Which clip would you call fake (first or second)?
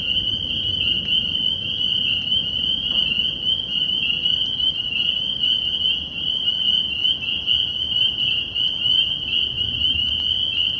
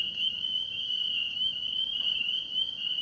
second